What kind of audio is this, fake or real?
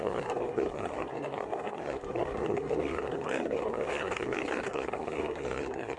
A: fake